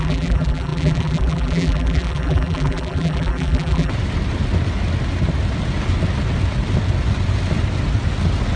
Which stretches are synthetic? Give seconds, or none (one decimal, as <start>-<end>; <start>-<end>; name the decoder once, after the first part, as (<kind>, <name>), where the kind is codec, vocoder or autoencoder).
0.0-3.9 (vocoder, BigVGAN v2)